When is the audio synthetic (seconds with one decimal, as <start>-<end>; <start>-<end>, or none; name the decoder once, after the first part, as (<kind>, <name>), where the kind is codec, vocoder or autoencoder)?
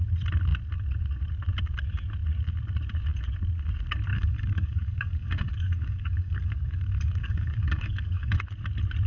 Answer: 4.1-8.4 (codec, DAC)